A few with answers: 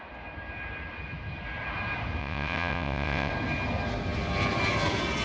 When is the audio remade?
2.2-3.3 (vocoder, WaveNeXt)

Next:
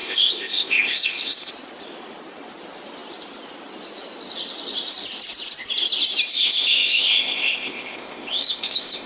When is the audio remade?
0.0-1.5 (codec, ZipCodec); 6.3-9.1

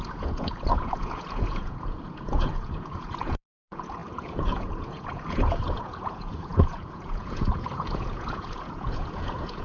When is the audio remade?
0.0-9.6 (vocoder, Vocos)

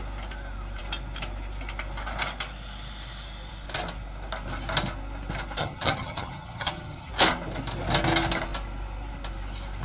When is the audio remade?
5.6-7.1 (vocoder, HiFi-GAN)

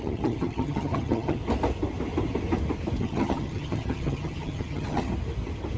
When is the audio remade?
0.0-1.4 (vocoder, HiFi-GAN); 3.0-5.1